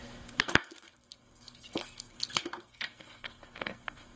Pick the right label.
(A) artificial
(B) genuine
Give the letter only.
A